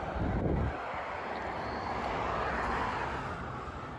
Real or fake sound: real